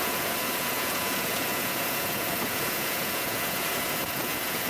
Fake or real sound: fake